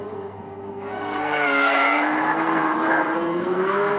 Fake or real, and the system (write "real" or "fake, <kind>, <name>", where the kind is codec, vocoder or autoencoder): fake, codec, SNAC